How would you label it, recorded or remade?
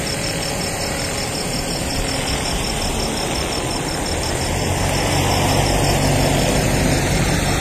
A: recorded